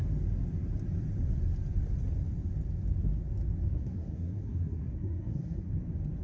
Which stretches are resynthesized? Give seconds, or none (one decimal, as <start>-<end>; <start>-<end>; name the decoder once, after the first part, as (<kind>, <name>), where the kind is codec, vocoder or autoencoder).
3.7-5.7 (codec, SNAC)